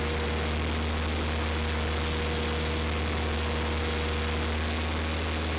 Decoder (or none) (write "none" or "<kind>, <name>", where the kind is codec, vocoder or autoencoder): none